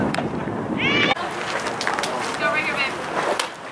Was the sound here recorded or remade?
recorded